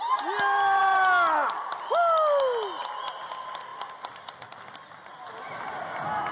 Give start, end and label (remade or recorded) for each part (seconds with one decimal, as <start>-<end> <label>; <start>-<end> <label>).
0.0-6.3 recorded